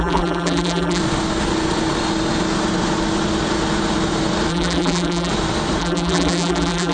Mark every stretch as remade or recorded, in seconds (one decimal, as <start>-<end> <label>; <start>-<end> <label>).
0.0-1.0 remade; 1.0-4.5 recorded; 4.5-5.3 remade; 5.3-5.8 recorded; 5.8-6.9 remade